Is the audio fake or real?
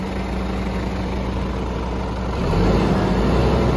real